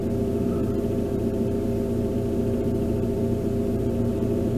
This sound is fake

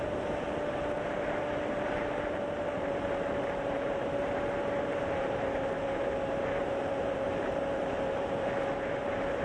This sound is fake